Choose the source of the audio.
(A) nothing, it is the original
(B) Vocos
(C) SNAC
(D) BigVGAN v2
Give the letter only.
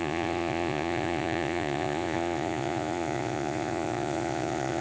B